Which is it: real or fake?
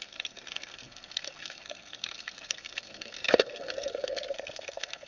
fake